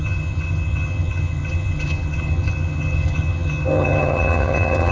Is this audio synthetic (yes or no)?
yes